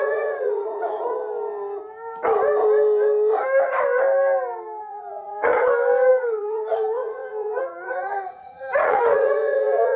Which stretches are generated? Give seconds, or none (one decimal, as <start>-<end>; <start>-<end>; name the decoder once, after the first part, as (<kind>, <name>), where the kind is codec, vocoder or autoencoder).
0.0-1.1 (vocoder, Vocos); 4.9-5.5; 6.1-10.0